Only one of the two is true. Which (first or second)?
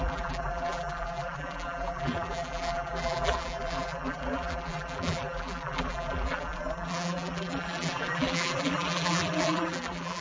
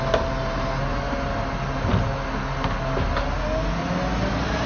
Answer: second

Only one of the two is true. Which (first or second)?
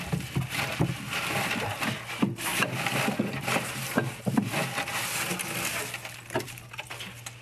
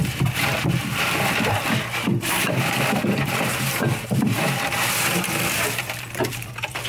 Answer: first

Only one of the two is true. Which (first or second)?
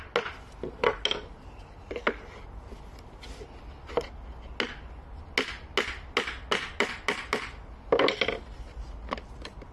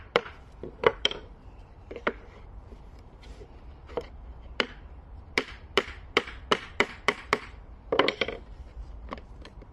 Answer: first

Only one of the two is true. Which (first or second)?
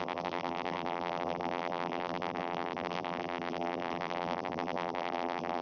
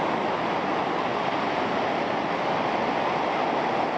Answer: second